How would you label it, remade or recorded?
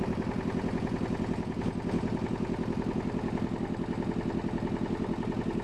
recorded